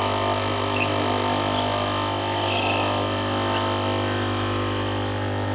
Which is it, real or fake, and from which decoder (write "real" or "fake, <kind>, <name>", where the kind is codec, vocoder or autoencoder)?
real